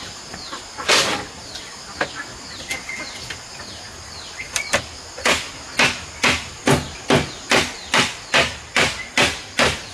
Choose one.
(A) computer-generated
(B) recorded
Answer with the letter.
B